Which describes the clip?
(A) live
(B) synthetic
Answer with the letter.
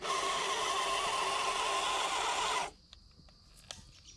A